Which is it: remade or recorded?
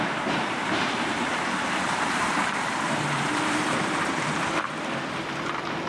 remade